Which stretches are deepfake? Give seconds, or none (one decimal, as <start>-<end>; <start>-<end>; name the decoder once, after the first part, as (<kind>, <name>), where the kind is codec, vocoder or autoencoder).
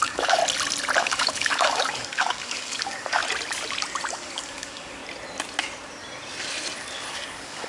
0.0-0.4 (codec, DAC); 1.0-3.2; 4.1-5.0; 7.1-7.7